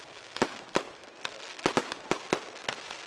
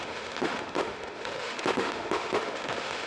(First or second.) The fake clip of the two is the second